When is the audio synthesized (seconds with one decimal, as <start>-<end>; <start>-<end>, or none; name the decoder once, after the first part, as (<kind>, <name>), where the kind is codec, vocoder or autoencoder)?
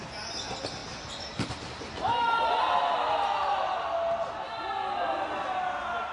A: none